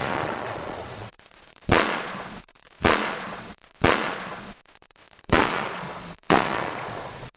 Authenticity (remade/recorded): remade